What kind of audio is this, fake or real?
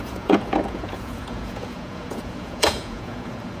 fake